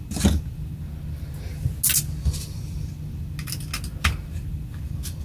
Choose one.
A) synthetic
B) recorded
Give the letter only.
B